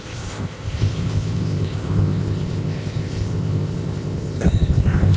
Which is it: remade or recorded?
remade